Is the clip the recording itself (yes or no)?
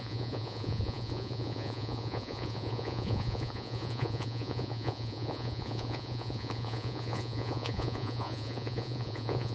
no